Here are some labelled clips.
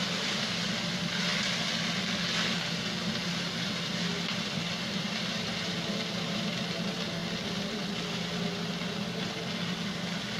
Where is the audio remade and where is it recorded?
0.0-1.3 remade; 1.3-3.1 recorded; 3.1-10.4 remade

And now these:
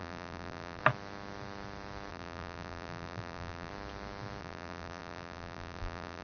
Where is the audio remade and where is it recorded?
0.0-0.8 remade; 0.8-2.1 recorded; 2.1-3.7 remade; 3.7-4.4 recorded; 4.4-6.2 remade

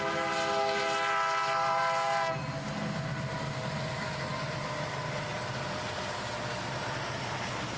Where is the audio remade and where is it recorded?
0.0-7.8 recorded

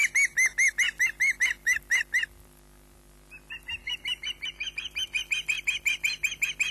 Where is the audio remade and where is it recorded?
0.0-3.8 recorded; 3.8-5.2 remade; 5.2-6.7 recorded

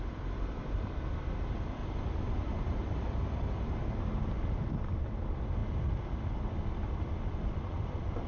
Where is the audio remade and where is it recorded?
0.0-1.8 remade; 1.8-2.6 recorded; 2.6-5.6 remade; 5.6-6.9 recorded; 6.9-8.3 remade